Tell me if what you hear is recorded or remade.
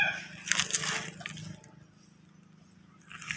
recorded